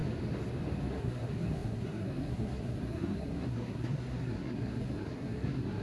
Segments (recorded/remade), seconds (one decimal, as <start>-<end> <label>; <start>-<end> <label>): 0.0-0.9 recorded; 0.9-5.8 remade